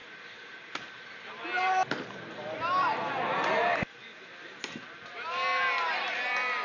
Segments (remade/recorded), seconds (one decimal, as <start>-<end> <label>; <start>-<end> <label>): 0.0-6.6 recorded